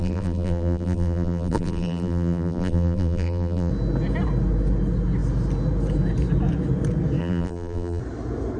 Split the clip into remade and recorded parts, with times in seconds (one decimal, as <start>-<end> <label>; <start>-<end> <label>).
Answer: 0.0-3.7 remade; 3.7-7.2 recorded; 7.2-8.0 remade; 8.0-8.6 recorded